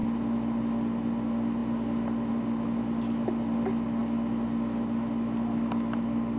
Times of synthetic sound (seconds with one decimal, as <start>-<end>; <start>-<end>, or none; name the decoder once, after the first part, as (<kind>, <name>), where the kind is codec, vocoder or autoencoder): none